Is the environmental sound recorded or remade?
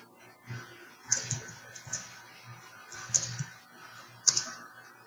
recorded